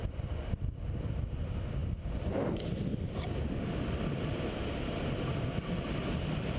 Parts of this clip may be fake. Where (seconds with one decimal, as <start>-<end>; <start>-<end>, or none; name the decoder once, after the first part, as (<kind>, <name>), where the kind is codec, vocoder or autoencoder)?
none